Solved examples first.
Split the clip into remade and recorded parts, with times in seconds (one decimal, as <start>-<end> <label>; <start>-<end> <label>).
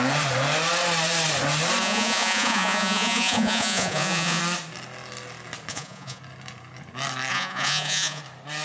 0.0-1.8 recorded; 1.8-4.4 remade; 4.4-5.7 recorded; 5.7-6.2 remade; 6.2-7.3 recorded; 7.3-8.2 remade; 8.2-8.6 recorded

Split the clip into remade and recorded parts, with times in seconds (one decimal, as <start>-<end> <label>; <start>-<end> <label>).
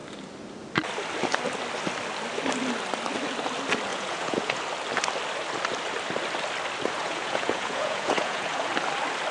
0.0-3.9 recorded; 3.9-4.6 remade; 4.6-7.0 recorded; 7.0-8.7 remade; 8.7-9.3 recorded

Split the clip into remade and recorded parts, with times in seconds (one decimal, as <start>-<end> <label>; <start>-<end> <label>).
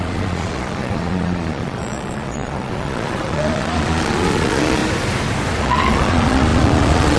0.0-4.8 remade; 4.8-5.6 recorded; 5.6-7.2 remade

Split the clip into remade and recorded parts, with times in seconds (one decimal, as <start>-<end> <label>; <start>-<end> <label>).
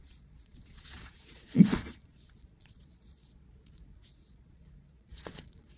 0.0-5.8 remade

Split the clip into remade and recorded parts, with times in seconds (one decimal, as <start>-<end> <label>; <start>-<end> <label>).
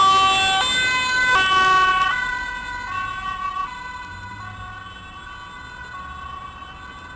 0.0-7.2 recorded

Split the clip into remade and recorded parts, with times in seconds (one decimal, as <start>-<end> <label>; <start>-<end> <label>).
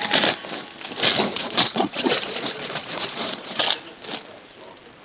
0.0-1.3 recorded; 1.3-3.6 remade; 3.6-5.0 recorded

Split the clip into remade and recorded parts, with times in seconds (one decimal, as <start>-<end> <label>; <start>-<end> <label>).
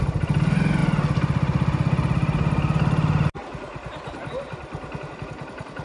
0.0-5.8 recorded